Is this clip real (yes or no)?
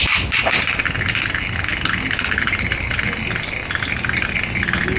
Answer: yes